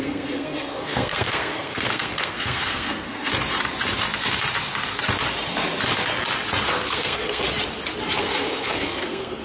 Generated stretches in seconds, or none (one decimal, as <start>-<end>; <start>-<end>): 0.0-3.3; 6.7-7.4; 8.2-9.4